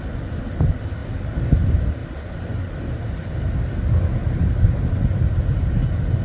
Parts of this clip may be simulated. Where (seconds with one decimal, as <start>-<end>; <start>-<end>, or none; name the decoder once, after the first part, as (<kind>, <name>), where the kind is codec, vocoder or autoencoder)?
none